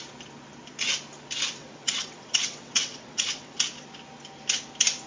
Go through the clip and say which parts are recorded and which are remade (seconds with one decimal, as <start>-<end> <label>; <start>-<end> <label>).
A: 0.0-1.6 recorded; 1.6-3.6 remade; 3.6-5.1 recorded

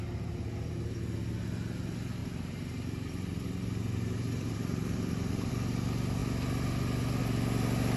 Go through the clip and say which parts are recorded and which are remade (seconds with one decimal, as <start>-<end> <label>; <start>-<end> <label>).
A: 0.0-2.2 recorded; 2.2-5.5 remade; 5.5-8.0 recorded

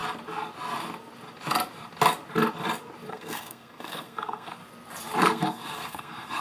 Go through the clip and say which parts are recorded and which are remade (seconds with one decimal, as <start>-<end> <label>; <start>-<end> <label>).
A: 0.0-3.1 recorded; 3.1-4.6 remade; 4.6-5.2 recorded; 5.2-6.4 remade